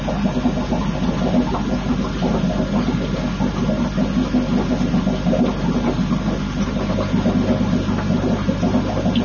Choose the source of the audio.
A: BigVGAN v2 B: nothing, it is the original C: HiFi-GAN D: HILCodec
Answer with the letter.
B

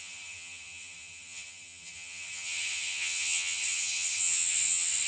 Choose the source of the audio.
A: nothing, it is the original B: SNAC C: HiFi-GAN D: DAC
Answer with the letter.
C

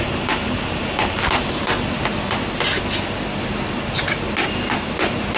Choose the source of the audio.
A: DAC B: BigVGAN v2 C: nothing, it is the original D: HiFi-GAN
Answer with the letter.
C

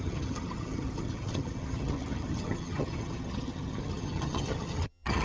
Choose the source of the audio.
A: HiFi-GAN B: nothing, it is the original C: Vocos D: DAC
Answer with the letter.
A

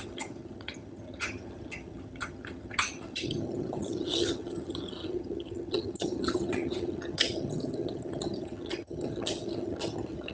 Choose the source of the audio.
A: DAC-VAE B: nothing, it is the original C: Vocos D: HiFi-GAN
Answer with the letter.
D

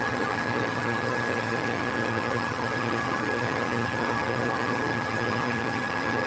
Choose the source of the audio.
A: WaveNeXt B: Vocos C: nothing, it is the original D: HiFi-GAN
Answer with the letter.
D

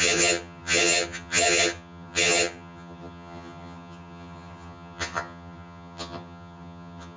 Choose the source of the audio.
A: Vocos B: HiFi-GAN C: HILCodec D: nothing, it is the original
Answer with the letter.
B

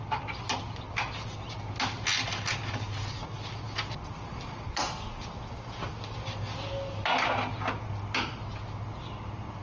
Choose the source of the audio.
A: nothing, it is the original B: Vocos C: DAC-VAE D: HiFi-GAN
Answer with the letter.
A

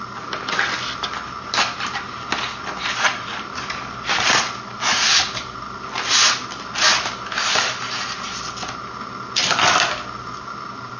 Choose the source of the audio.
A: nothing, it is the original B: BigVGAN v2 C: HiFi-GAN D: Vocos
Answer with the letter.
A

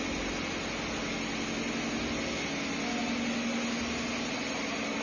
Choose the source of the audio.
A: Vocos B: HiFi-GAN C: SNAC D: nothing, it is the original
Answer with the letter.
D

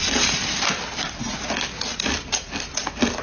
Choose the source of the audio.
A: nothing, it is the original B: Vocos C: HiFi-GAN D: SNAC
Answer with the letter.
A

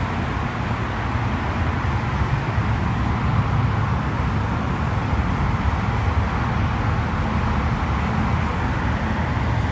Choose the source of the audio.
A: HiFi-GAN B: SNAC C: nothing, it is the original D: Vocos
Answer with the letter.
C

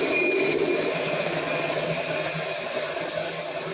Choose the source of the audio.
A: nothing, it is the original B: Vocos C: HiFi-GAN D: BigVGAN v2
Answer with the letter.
A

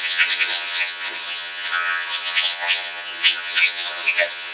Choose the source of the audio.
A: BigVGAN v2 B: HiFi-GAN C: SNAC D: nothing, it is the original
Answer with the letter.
B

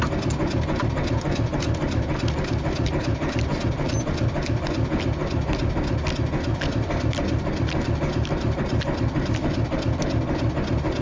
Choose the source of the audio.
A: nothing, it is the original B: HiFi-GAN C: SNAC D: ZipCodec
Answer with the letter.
A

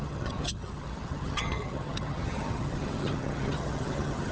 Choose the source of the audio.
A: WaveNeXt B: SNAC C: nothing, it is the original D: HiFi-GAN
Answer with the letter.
D